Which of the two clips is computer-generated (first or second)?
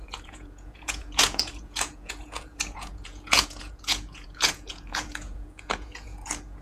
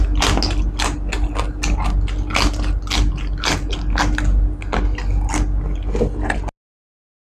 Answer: first